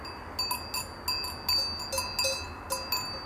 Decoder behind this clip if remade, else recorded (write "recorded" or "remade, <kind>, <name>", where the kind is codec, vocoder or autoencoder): recorded